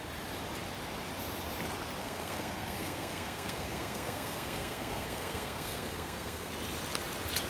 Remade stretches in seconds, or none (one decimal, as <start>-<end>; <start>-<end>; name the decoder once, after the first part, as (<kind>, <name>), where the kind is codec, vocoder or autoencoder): 2.0-6.5 (codec, SNAC)